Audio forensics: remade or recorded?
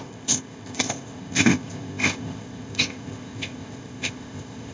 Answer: remade